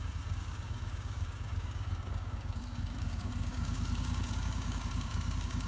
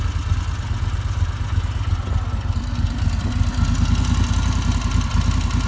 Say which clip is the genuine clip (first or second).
second